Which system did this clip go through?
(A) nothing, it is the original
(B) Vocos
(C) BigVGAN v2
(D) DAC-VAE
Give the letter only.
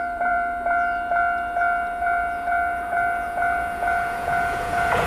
B